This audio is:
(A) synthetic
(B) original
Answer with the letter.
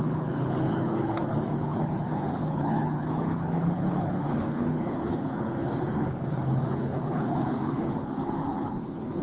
A